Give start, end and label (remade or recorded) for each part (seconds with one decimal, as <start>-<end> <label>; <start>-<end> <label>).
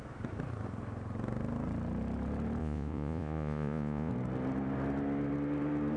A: 0.0-2.6 recorded; 2.6-4.1 remade; 4.1-6.0 recorded